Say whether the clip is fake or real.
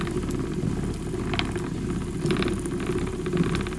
real